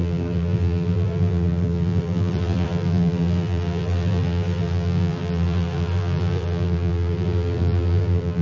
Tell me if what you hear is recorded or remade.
remade